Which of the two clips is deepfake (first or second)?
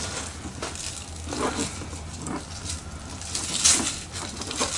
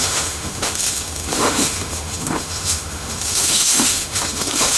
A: second